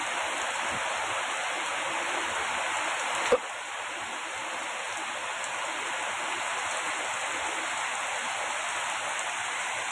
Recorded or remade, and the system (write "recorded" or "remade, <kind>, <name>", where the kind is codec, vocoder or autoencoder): recorded